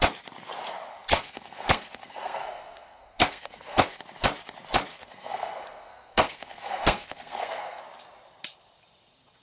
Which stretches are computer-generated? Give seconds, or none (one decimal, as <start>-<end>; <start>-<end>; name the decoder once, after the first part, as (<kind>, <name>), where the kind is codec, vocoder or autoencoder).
0.9-4.0 (codec, SNAC); 4.9-7.8